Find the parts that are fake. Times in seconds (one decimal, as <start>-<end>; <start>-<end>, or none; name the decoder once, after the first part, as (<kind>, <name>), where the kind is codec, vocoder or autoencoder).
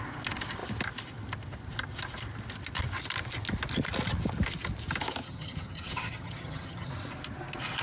5.2-6.9 (vocoder, HiFi-GAN)